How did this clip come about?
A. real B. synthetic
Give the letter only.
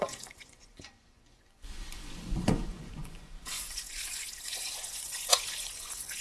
B